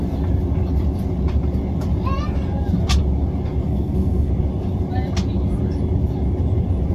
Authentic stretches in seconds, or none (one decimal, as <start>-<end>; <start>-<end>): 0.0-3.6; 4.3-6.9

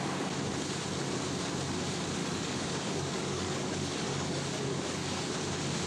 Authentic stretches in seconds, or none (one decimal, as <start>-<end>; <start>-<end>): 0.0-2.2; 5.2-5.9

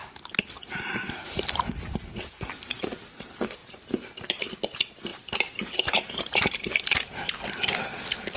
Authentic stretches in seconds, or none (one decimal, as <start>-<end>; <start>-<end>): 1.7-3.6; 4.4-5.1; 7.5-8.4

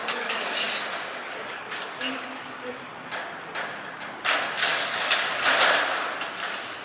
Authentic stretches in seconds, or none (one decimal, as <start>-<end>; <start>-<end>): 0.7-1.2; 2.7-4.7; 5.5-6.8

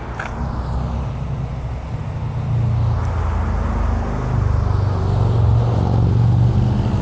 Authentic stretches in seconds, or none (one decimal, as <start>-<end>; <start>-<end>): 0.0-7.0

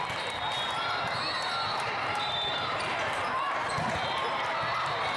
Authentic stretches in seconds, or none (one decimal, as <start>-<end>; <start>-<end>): 0.0-1.7; 3.7-5.2

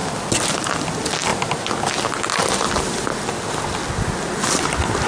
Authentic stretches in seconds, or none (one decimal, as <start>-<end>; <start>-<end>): 0.0-5.1